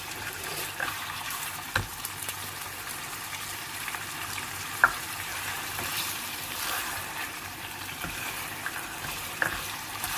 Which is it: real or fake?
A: fake